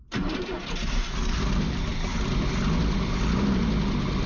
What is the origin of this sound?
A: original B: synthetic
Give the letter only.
A